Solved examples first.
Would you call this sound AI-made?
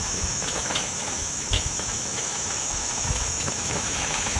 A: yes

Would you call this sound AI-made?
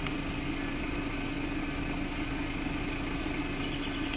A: no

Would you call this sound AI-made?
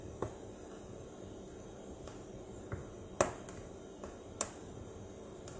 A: no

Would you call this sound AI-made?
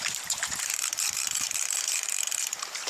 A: yes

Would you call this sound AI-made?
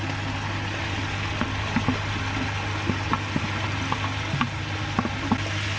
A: no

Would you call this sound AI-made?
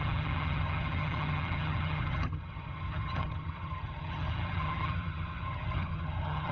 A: yes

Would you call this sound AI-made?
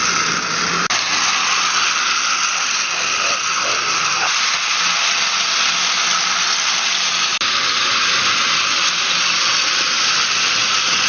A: no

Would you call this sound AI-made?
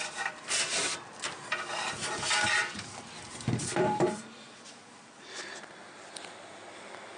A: yes